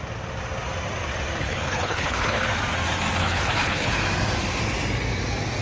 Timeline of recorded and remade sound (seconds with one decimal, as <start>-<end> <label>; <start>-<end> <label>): 0.0-1.4 recorded; 1.4-2.4 remade; 2.4-3.2 recorded; 3.2-3.9 remade; 3.9-5.6 recorded